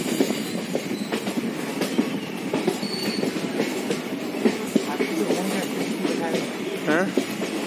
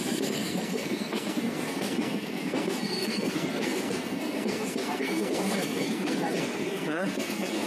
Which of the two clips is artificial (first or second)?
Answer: second